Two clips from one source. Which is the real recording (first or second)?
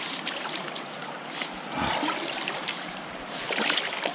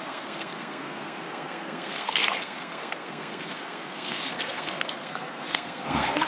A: first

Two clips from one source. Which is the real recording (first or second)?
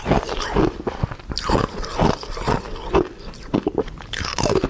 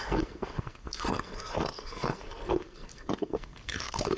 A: first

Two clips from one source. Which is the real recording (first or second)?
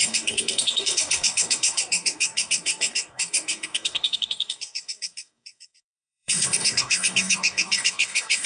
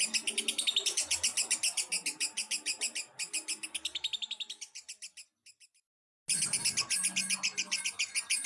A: second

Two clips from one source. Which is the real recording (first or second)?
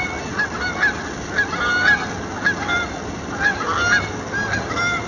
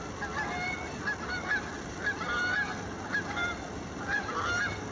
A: first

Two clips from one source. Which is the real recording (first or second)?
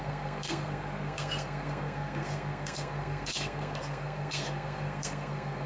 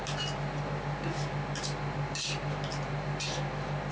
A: second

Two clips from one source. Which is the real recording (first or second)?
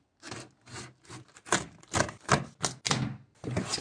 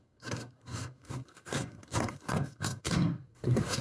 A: first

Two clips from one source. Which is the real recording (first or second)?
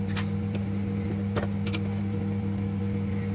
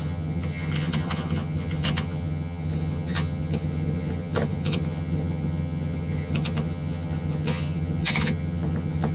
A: first